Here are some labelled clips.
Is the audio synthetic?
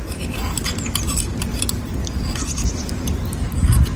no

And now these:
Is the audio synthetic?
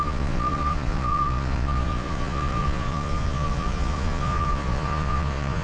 yes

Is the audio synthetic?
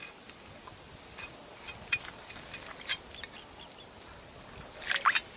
no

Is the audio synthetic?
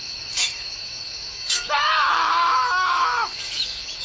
yes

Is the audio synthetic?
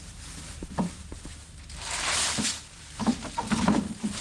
no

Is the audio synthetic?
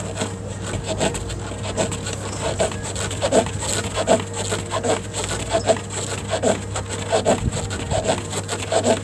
no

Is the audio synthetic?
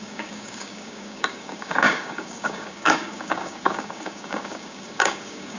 yes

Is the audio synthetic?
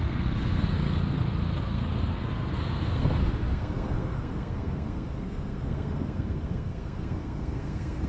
yes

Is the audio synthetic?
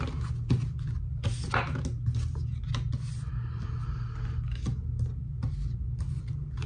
no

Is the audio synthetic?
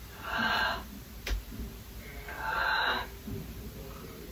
no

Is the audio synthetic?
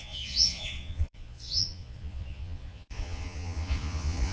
yes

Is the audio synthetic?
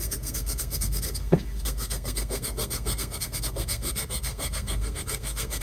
yes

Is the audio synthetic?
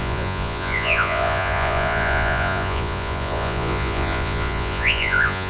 yes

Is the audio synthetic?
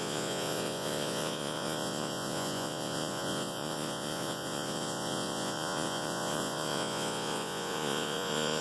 yes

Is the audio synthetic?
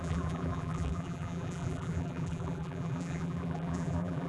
yes